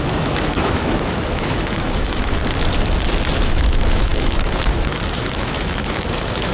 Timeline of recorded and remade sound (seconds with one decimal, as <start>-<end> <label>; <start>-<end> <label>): 0.0-2.4 remade; 2.4-3.4 recorded; 3.4-6.5 remade